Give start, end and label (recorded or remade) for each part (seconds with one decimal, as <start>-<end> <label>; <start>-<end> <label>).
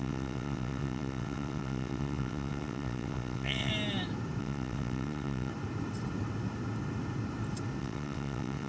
0.0-3.7 remade; 3.7-4.4 recorded; 4.4-5.5 remade; 5.5-7.8 recorded; 7.8-8.7 remade